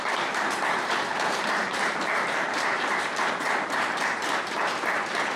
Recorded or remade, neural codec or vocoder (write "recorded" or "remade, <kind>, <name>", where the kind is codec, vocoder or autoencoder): remade, vocoder, BigVGAN v2